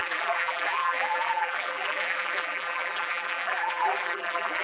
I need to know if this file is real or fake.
fake